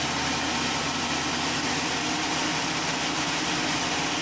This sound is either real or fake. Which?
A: real